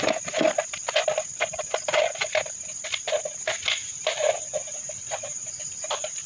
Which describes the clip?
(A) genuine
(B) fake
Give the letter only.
A